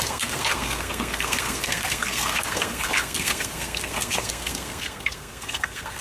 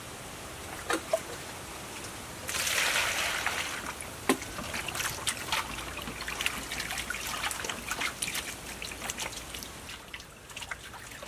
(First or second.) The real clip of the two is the second